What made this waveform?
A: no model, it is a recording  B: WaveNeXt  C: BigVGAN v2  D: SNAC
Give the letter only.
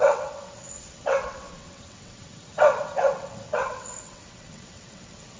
B